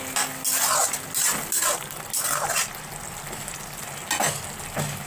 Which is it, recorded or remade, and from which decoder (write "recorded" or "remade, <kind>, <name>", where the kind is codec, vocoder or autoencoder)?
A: recorded